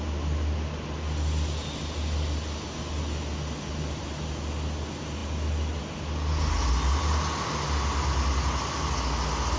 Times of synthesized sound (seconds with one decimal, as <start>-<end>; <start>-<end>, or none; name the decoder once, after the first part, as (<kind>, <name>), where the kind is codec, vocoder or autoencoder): none